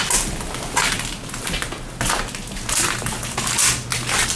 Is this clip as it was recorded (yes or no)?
yes